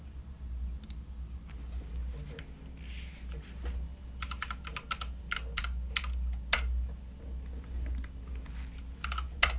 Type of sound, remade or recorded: recorded